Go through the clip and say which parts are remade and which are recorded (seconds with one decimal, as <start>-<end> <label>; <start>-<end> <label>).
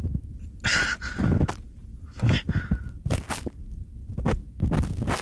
0.0-1.9 recorded; 1.9-3.6 remade; 3.6-5.2 recorded